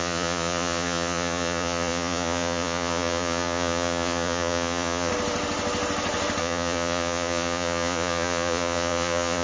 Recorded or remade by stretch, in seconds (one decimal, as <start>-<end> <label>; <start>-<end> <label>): 0.0-5.1 remade; 5.1-6.4 recorded; 6.4-9.4 remade